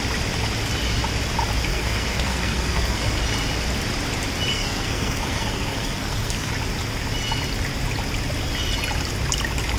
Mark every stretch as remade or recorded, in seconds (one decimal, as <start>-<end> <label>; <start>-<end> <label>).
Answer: 0.0-1.7 recorded; 1.7-3.2 remade; 3.2-4.5 recorded; 4.5-6.5 remade; 6.5-9.8 recorded